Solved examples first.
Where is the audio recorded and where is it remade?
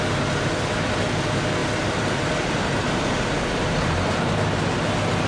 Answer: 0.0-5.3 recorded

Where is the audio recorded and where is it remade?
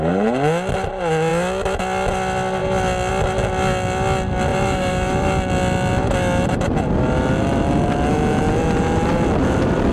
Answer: 0.0-4.5 recorded; 4.5-5.3 remade; 5.3-9.9 recorded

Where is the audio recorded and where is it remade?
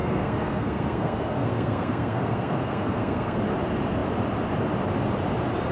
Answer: 0.0-3.4 remade; 3.4-5.7 recorded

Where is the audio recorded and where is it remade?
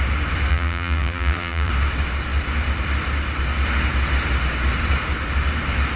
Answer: 0.0-0.5 recorded; 0.5-1.7 remade; 1.7-6.0 recorded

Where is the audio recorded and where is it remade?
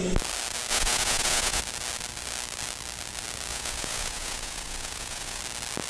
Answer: 0.0-0.7 recorded; 0.7-1.6 remade; 1.6-3.5 recorded; 3.5-5.4 remade; 5.4-5.9 recorded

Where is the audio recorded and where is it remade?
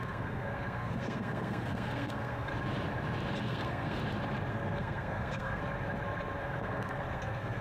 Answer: 0.0-2.5 remade; 2.5-3.4 recorded; 3.4-4.0 remade; 4.0-4.5 recorded; 4.5-5.6 remade; 5.6-6.4 recorded; 6.4-7.6 remade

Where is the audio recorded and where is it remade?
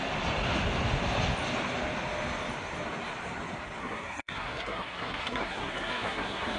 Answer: 0.0-3.8 recorded; 3.8-6.6 remade